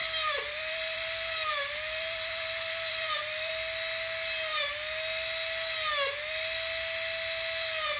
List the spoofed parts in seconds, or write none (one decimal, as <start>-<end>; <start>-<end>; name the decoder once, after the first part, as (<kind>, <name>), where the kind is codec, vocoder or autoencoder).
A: 0.0-3.5 (vocoder, BigVGAN v2)